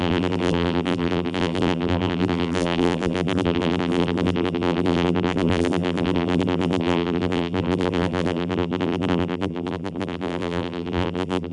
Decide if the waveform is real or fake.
fake